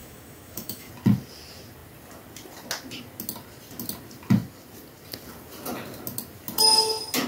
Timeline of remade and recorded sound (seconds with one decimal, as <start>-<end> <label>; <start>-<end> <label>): 0.0-0.9 remade; 0.9-7.3 recorded